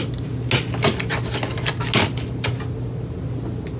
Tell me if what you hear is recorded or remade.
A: recorded